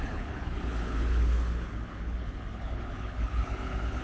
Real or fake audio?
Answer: fake